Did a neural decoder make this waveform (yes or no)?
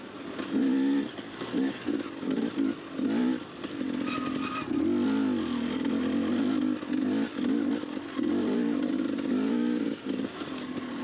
no